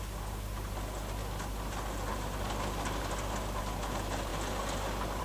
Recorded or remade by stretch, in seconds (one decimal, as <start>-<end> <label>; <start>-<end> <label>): 0.0-5.2 recorded